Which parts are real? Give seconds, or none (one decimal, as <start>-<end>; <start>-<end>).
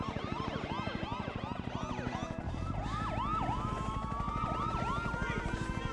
0.0-5.9